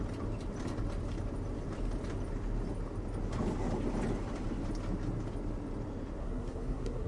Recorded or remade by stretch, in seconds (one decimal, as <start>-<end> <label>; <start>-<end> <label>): 0.0-6.2 recorded; 6.2-7.1 remade